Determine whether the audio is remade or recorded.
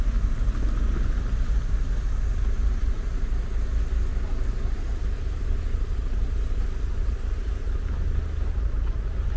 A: recorded